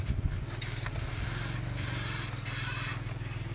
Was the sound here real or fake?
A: real